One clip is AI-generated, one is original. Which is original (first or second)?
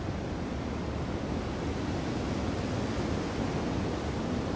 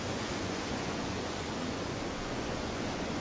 first